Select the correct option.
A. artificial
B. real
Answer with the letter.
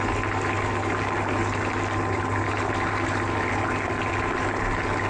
B